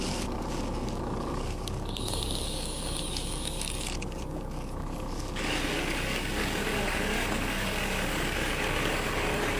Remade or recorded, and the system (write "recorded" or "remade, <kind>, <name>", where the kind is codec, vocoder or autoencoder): remade, codec, DAC